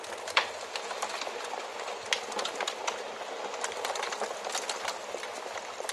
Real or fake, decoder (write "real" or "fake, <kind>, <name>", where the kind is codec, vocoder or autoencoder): real